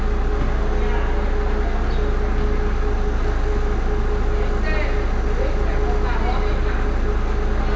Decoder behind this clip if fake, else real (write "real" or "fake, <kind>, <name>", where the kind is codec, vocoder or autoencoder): real